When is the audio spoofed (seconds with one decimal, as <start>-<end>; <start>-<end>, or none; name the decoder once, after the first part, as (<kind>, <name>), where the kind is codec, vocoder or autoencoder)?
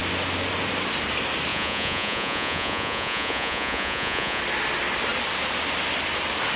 1.5-4.4 (vocoder, Vocos)